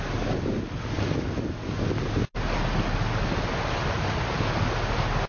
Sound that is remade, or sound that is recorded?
recorded